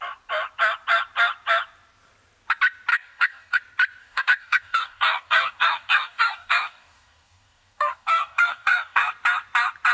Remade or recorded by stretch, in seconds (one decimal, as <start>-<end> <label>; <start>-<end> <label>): 0.0-2.9 recorded; 2.9-3.6 remade; 3.6-4.0 recorded; 4.0-9.1 remade; 9.1-9.9 recorded

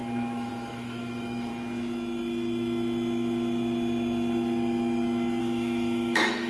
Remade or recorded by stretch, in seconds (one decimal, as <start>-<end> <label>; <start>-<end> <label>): 0.0-1.5 remade; 1.5-5.4 recorded; 5.4-6.5 remade

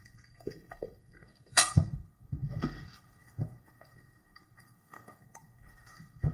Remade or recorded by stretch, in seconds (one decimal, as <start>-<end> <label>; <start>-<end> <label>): 0.0-6.3 remade

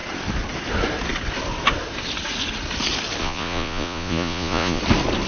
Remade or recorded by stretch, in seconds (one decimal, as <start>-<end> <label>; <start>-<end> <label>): 0.0-3.2 recorded; 3.2-4.8 remade; 4.8-5.3 recorded